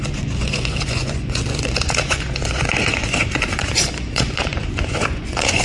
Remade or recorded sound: remade